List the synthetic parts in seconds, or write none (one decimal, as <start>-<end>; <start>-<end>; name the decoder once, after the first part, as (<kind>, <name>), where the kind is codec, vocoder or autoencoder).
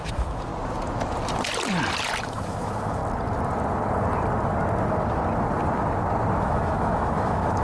0.0-0.5 (autoencoder, DAC-VAE); 2.2-3.0; 6.4-7.6